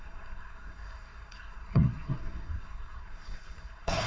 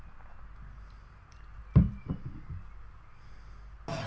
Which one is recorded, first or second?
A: second